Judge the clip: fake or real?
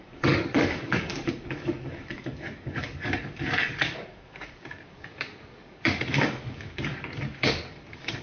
fake